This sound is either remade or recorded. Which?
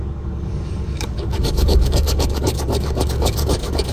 remade